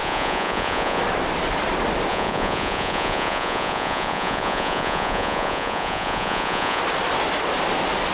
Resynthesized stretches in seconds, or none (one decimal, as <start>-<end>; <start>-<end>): 0.0-1.0; 2.1-6.8

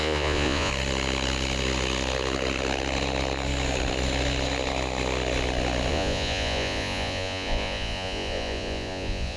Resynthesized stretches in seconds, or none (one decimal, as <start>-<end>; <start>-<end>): 0.0-0.7; 5.9-9.4

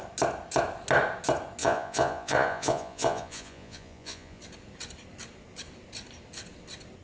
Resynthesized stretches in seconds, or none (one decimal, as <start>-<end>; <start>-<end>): 1.6-4.4

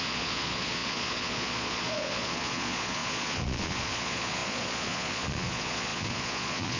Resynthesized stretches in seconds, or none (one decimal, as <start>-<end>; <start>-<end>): 0.0-6.8

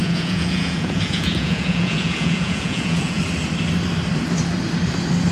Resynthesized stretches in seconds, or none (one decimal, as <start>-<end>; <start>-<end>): 0.0-3.2

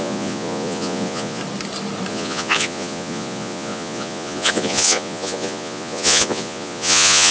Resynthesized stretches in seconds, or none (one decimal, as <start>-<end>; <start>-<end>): 0.0-1.4; 2.1-7.3

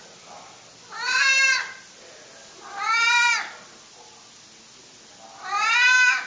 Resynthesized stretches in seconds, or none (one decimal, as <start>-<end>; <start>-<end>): none